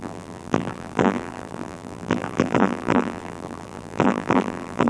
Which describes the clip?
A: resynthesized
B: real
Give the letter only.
A